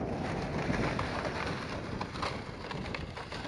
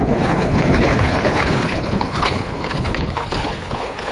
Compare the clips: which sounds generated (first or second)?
second